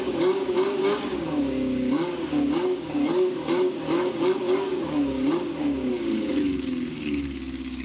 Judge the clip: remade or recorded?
remade